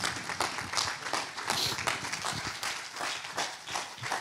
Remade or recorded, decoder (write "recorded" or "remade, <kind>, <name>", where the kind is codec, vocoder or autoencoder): recorded